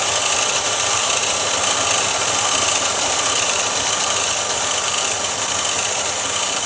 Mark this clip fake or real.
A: fake